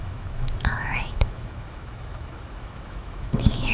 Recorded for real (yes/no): no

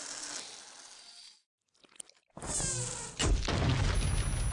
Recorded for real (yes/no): yes